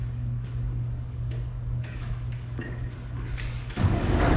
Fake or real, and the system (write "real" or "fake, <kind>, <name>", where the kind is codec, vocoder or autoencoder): fake, codec, DAC